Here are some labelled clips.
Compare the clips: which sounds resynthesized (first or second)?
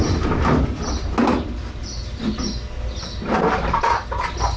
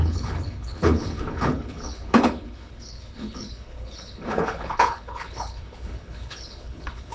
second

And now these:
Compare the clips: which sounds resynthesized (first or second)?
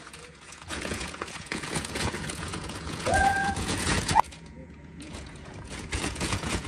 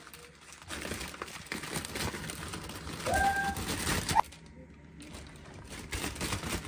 first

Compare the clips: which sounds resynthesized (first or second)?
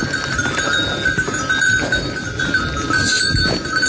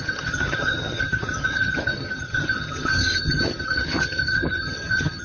second